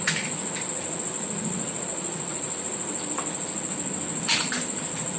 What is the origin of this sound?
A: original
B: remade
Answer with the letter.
A